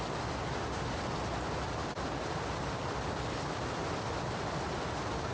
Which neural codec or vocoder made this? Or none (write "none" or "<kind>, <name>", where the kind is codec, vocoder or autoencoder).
none